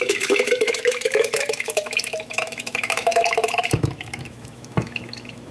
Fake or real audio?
fake